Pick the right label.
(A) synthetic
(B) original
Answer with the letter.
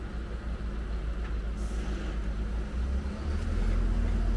B